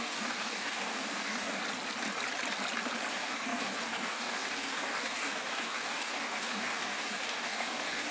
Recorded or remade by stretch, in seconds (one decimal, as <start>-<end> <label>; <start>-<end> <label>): 0.0-1.6 remade; 1.6-3.1 recorded; 3.1-8.1 remade

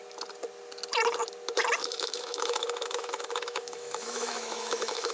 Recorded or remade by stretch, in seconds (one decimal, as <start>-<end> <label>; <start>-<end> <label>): 0.0-1.8 recorded; 1.8-5.1 remade